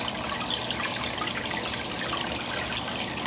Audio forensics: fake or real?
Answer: real